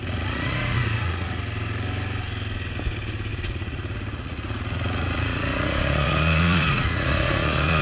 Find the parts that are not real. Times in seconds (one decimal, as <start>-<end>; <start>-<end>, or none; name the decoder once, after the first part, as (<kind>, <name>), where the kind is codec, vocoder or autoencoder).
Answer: 0.0-1.4 (vocoder, Vocos); 3.3-7.8